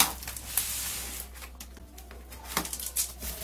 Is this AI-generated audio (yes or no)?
no